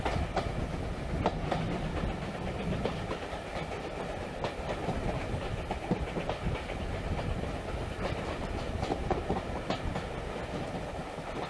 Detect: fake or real real